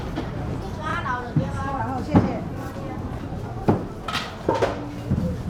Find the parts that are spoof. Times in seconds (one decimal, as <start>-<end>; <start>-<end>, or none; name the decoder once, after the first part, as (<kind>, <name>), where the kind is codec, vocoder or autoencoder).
0.9-1.8 (vocoder, BigVGAN v2)